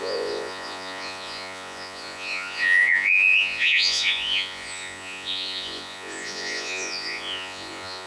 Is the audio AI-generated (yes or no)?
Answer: yes